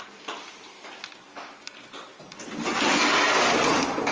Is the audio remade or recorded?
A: recorded